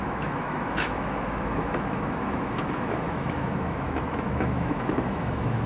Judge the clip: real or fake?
fake